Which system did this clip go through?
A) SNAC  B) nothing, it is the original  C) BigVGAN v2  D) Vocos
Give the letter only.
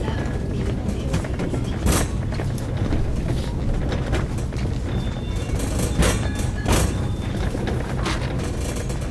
B